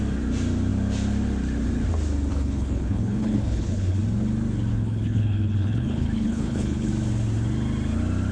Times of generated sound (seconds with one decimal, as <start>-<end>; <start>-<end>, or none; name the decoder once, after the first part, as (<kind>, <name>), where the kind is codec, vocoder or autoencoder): 2.3-4.0 (codec, HILCodec); 4.7-6.9